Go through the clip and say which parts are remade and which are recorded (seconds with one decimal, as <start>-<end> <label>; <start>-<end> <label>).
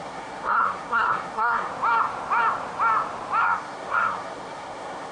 0.0-1.7 remade; 1.7-3.4 recorded; 3.4-5.1 remade